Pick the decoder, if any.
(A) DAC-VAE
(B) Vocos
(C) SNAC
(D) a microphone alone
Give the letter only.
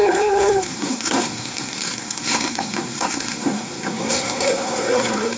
C